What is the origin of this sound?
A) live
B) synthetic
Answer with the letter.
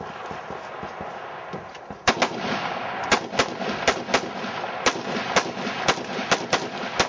A